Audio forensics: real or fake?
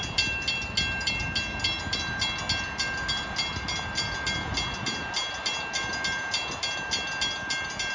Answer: real